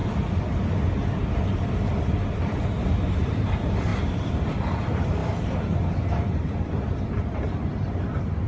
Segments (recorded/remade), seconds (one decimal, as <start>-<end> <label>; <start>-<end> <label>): 0.0-2.0 recorded; 2.0-8.5 remade